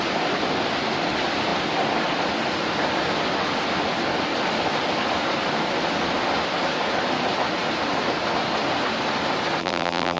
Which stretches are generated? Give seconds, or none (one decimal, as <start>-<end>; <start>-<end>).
9.6-10.2

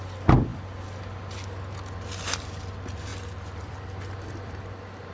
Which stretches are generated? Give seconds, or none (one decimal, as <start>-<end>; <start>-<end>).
3.1-5.1

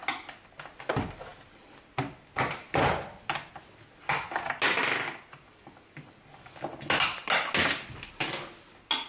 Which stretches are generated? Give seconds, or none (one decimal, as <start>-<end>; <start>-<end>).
none

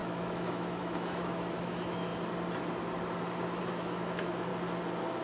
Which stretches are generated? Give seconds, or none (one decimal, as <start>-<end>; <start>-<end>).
0.0-2.1; 3.6-4.5

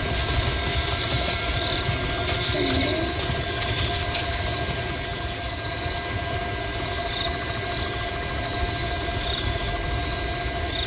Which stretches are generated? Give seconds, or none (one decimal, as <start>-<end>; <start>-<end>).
0.7-1.8

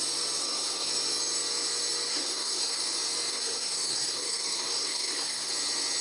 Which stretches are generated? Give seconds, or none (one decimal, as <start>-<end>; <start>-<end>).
0.4-0.9; 2.1-2.8; 3.3-5.5

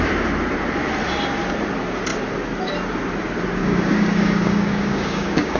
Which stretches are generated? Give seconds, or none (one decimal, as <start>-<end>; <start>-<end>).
3.6-5.6

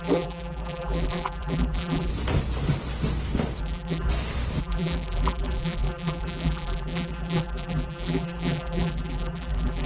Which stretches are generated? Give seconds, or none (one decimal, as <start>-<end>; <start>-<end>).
0.0-2.1; 3.6-4.1; 4.6-9.9